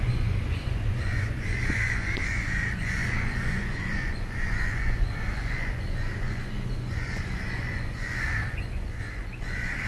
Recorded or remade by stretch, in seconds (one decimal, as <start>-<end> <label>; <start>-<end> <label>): 0.0-9.9 remade